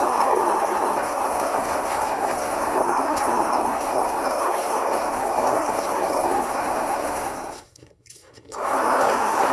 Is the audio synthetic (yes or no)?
yes